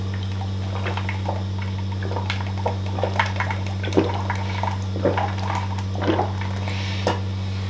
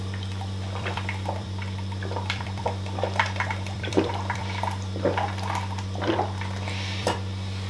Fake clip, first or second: second